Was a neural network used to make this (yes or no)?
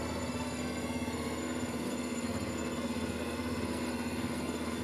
yes